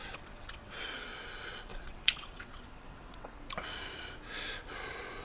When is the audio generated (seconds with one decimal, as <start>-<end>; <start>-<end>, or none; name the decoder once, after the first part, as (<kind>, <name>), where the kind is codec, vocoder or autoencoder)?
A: 0.0-0.8 (vocoder, WaveNeXt); 1.7-3.3